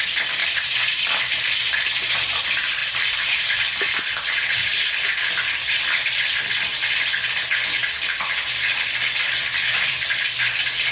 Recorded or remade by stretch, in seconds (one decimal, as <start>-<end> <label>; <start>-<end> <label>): 0.0-0.4 recorded; 0.4-2.4 remade; 2.4-2.8 recorded; 2.8-3.6 remade; 3.6-10.9 recorded